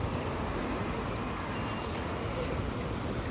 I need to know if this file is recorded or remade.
recorded